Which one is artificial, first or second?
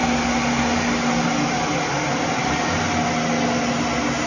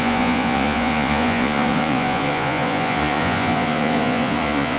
second